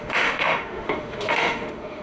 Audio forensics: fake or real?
fake